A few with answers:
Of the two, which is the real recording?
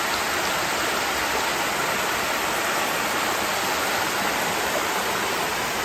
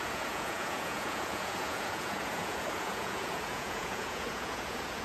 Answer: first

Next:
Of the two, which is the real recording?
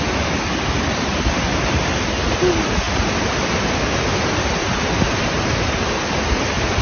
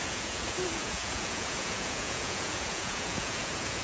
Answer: first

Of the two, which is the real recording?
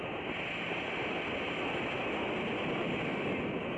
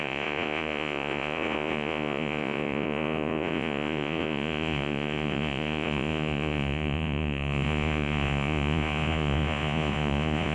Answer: first